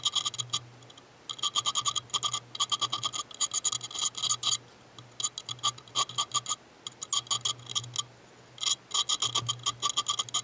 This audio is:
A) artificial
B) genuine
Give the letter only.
B